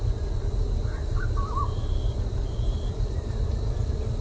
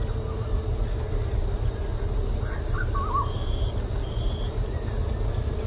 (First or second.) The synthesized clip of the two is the first